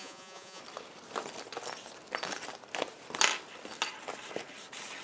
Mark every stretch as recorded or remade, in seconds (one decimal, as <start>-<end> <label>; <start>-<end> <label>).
0.0-0.6 remade; 0.6-5.0 recorded